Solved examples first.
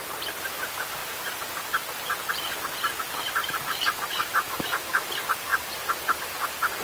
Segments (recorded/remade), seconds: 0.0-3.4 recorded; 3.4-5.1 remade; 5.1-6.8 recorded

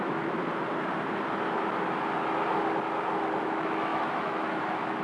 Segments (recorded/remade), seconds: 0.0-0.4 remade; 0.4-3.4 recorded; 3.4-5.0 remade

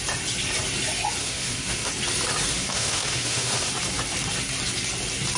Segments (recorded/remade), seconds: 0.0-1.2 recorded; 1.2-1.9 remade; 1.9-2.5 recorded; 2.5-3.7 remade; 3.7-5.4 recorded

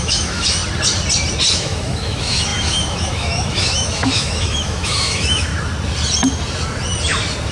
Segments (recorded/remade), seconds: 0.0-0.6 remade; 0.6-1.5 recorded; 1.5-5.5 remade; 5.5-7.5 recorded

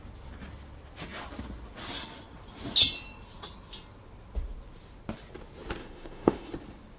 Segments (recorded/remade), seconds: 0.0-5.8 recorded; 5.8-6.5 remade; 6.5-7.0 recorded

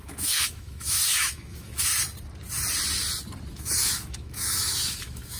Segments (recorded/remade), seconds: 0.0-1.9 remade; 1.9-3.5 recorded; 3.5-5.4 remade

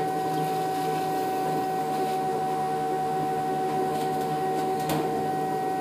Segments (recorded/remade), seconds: 0.0-1.8 recorded; 1.8-5.3 remade; 5.3-5.8 recorded